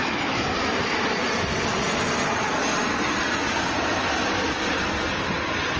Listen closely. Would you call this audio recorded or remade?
recorded